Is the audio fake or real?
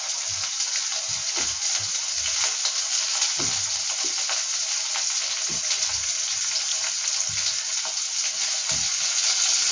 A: real